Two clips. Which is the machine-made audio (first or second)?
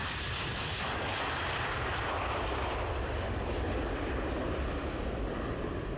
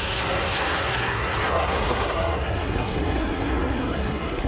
second